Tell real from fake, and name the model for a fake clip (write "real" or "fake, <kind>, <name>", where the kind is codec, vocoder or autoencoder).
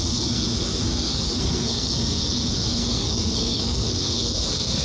fake, codec, SNAC